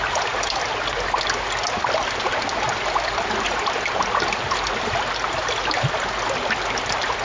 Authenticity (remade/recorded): recorded